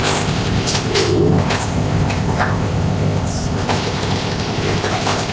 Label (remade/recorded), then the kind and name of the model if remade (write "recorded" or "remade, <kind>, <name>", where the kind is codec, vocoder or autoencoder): remade, codec, ZipCodec